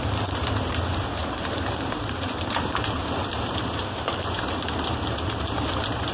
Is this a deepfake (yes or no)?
yes